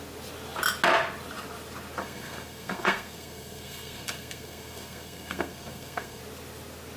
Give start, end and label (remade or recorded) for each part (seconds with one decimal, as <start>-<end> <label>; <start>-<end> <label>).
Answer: 0.0-2.0 recorded; 2.0-6.2 remade; 6.2-7.0 recorded